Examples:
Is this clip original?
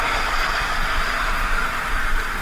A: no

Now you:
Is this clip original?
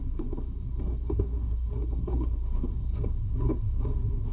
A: no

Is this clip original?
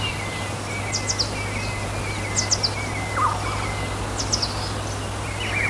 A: yes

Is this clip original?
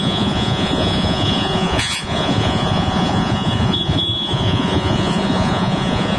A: no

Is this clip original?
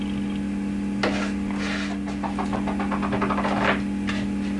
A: yes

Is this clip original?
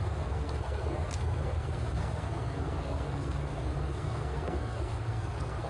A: no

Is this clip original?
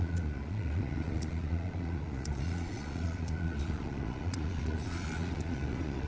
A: no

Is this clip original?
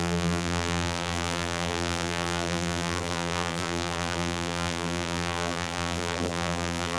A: no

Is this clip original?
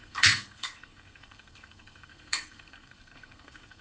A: no